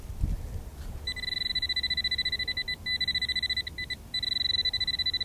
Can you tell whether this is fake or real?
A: real